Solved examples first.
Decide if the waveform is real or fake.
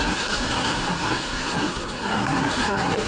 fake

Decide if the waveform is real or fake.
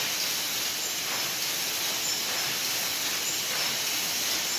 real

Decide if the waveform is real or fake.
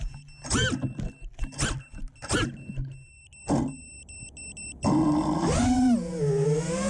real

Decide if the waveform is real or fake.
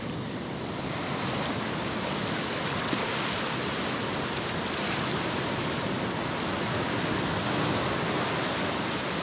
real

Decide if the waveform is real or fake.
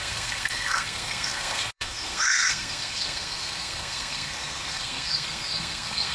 fake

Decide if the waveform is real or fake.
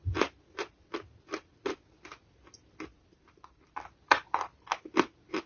fake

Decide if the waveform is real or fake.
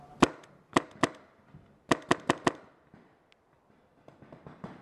real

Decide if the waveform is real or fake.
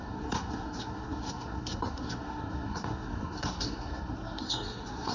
fake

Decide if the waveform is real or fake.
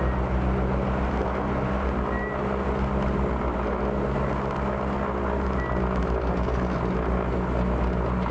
real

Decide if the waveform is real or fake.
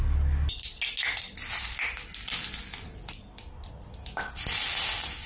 real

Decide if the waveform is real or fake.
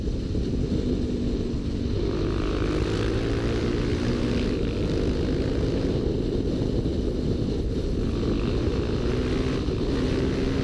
real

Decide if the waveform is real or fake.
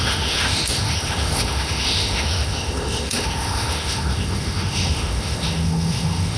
fake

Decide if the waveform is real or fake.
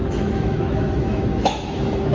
fake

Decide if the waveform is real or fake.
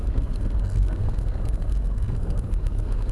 fake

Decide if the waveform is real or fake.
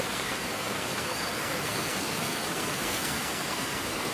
fake